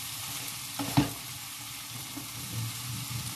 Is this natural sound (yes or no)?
yes